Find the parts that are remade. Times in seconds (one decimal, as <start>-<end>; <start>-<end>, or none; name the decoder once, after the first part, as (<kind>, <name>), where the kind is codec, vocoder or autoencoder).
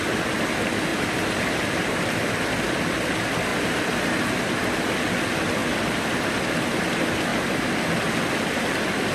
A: 0.9-2.2 (vocoder, BigVGAN v2); 3.5-4.3; 7.3-7.8